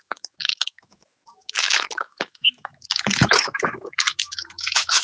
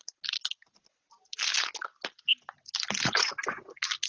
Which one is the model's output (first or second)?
first